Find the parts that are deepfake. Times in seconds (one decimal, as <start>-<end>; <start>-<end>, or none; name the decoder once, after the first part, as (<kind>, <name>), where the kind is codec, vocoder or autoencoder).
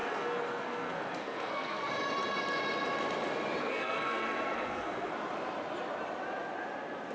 0.0-1.9 (codec, SNAC); 3.6-5.1